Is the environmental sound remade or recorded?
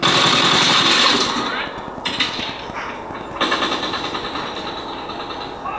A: recorded